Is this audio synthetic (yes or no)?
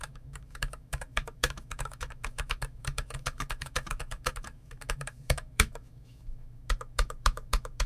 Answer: yes